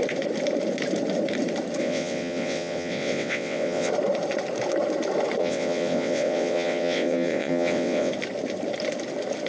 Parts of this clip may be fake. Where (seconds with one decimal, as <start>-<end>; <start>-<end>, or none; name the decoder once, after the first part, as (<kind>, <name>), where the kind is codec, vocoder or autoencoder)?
1.8-3.9 (vocoder, WaveNeXt); 5.4-8.1